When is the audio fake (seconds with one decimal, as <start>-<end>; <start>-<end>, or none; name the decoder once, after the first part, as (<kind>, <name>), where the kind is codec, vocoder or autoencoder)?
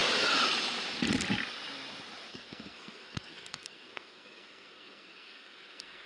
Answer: 2.3-6.1 (codec, SNAC)